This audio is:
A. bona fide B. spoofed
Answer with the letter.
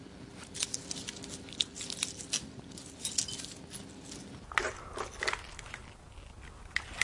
A